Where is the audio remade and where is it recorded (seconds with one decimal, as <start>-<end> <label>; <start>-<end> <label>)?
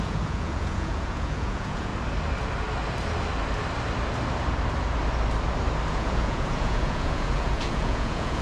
0.0-1.9 remade; 1.9-5.9 recorded; 5.9-8.4 remade